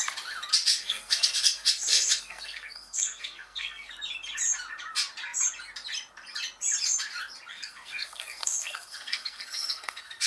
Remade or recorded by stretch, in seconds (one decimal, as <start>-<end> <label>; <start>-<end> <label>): 0.0-0.7 recorded; 0.7-3.9 remade; 3.9-7.5 recorded; 7.5-10.3 remade